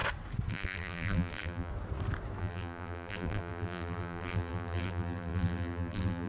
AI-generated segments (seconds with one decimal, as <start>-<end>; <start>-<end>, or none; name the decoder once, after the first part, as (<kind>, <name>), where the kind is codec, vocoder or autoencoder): 0.5-1.7 (vocoder, BigVGAN v2); 2.4-6.3